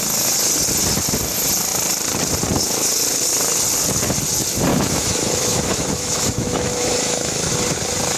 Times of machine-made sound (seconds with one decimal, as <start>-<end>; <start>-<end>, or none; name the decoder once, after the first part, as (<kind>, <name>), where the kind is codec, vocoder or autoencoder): 4.7-7.5 (autoencoder, DAC-VAE)